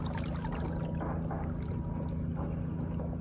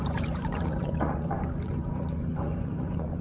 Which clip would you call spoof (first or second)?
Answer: second